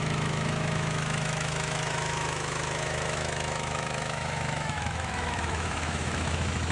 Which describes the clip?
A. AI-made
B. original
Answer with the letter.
A